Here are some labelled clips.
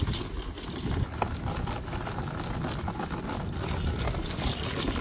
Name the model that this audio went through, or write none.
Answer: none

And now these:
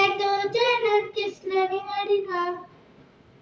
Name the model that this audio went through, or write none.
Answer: vocoder, Vocos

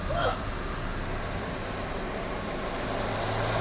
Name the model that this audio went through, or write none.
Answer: none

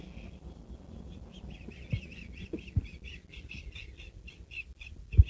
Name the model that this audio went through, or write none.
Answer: none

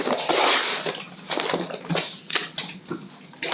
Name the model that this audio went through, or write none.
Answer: none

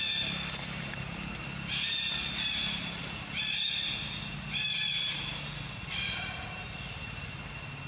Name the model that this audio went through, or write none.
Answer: none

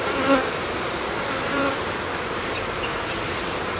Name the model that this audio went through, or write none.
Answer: vocoder, BigVGAN v2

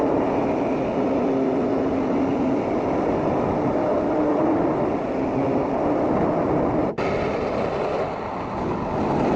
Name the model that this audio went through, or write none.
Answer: none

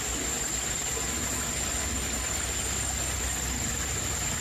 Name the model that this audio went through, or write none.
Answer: none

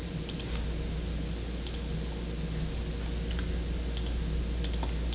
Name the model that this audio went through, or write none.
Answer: none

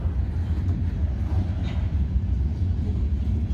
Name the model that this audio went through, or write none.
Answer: none